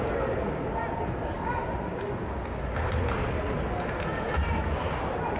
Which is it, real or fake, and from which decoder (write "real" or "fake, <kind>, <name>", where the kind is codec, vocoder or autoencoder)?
real